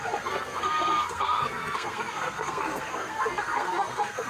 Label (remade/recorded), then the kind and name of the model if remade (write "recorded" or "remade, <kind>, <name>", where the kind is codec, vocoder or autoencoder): remade, codec, SNAC